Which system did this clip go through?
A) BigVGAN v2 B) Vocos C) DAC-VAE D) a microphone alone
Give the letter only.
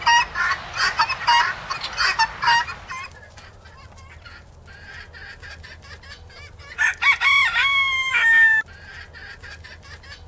D